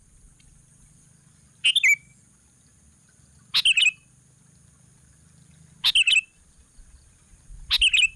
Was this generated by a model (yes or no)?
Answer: no